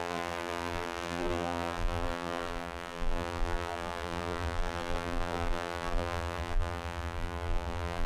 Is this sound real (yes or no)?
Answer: no